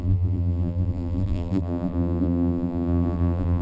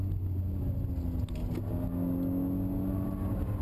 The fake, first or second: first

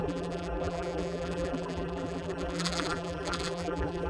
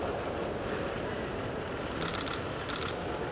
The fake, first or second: first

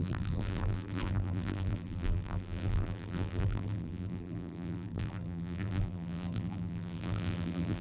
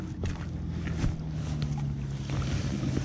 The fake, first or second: first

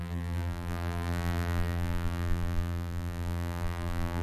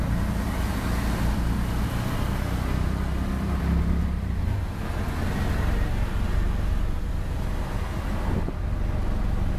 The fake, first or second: first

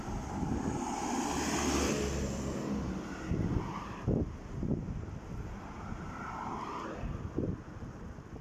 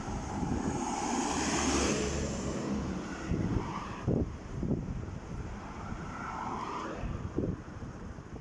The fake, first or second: second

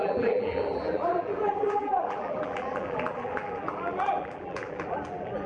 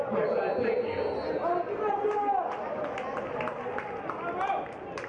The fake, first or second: first